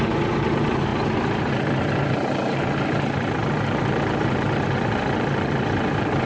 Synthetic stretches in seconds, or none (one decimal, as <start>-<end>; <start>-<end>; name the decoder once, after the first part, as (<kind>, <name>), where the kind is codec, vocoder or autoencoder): 0.0-6.3 (vocoder, BigVGAN v2)